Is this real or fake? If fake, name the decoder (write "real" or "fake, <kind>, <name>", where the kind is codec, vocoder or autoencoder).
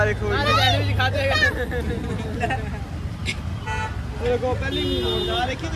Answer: real